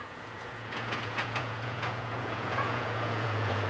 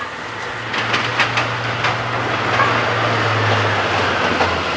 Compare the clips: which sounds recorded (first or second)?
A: second